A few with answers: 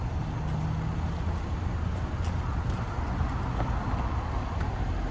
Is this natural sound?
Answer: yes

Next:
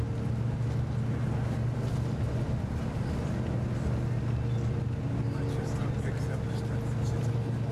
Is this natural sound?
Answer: yes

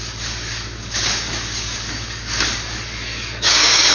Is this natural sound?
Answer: no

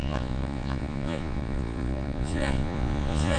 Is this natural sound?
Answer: no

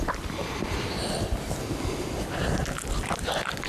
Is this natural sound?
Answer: yes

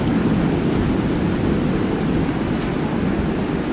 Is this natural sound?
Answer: yes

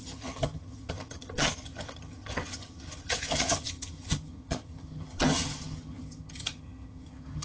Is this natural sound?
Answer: no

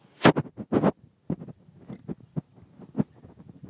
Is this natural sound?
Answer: yes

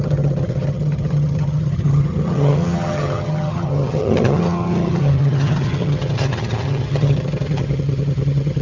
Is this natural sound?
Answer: no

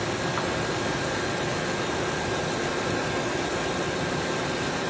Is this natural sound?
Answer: yes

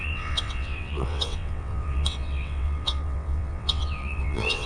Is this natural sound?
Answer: no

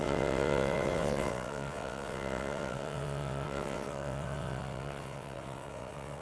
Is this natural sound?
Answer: no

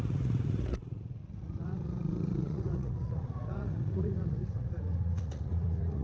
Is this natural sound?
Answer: no